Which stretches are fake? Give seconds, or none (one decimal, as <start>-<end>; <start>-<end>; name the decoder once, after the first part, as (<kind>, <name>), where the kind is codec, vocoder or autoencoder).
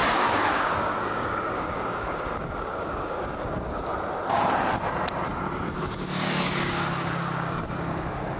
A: 0.0-3.9 (codec, DAC); 5.8-8.4